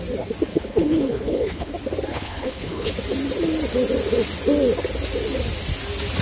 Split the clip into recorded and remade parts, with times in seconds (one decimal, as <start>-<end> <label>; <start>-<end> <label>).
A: 0.0-0.5 recorded; 0.5-1.7 remade; 1.7-2.1 recorded; 2.1-2.9 remade; 2.9-6.2 recorded